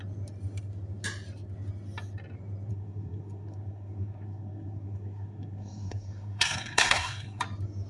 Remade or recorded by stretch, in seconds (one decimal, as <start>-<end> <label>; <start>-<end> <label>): 0.0-2.7 recorded; 2.7-7.4 remade; 7.4-7.9 recorded